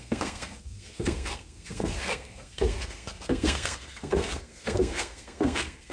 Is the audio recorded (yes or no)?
no